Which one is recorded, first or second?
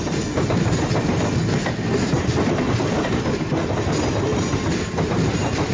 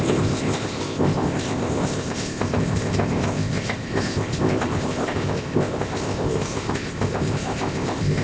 first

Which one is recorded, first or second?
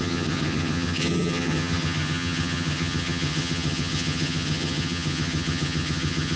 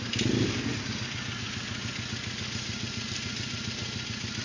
second